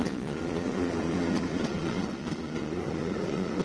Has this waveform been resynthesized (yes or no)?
yes